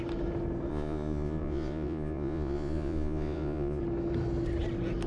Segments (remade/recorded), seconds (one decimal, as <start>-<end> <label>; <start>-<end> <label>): 0.0-0.7 recorded; 0.7-3.8 remade; 3.8-5.1 recorded